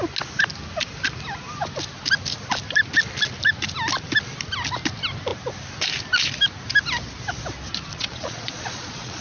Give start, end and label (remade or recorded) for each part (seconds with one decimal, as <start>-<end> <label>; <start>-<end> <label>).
0.0-7.9 recorded; 7.9-9.2 remade